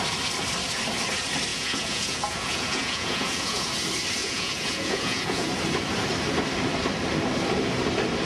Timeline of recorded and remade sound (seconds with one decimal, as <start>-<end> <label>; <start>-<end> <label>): 0.0-1.5 recorded; 1.5-3.7 remade; 3.7-4.2 recorded; 4.2-5.5 remade; 5.5-8.3 recorded